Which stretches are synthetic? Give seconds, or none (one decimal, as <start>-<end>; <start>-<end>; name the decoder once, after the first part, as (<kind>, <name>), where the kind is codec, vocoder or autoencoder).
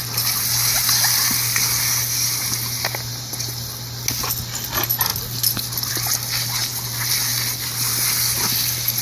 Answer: 5.1-5.9 (vocoder, BigVGAN v2)